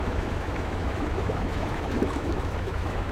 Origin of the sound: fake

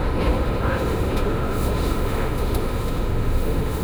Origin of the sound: fake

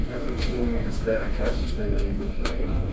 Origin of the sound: fake